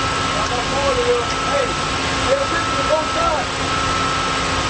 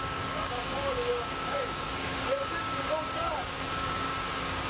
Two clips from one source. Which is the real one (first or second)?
first